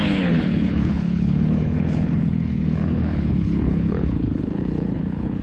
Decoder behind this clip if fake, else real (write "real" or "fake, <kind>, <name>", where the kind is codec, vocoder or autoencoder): fake, codec, HILCodec